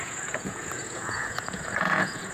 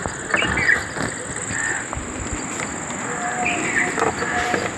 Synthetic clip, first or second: first